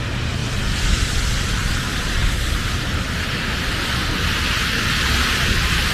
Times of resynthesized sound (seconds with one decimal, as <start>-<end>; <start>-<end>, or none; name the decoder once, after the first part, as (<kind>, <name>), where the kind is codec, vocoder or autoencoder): none